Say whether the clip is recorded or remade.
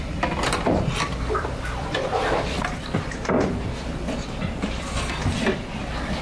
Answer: remade